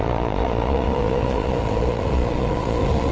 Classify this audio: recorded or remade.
remade